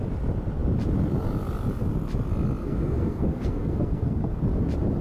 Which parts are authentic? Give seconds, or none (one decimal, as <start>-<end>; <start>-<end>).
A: 0.0-2.6; 4.4-5.0